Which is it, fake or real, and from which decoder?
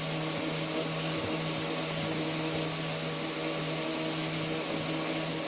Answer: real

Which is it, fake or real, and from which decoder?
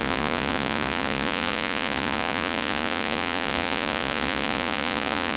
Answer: fake, vocoder, Vocos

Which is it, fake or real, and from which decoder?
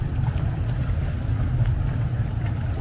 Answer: real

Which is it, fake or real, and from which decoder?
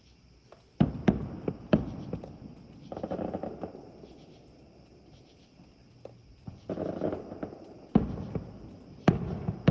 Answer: real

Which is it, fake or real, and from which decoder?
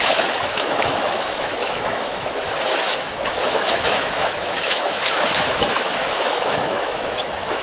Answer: fake, autoencoder, DAC-VAE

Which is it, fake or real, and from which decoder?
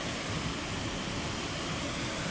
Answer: real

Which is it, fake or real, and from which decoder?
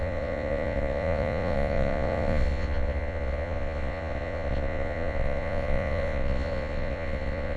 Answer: fake, vocoder, Vocos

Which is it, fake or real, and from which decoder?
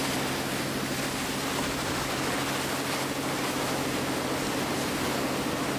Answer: real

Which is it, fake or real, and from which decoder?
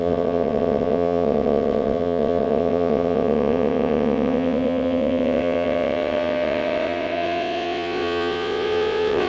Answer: fake, vocoder, WaveNeXt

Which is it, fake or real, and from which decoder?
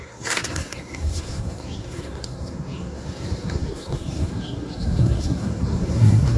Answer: fake, codec, SNAC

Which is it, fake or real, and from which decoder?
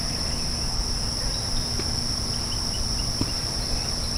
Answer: real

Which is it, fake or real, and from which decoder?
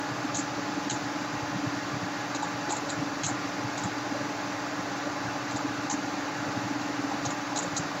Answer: real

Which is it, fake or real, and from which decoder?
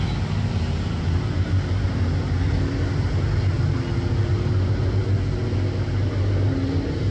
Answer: real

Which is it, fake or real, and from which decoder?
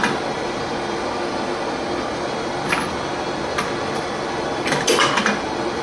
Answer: real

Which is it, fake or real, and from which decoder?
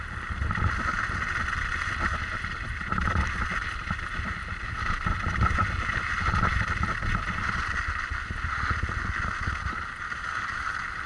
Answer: real